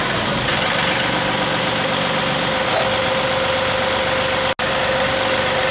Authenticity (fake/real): real